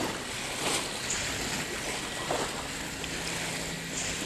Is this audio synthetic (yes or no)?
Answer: no